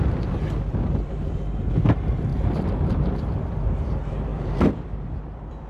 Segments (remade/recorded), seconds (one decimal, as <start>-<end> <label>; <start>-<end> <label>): 0.0-5.7 remade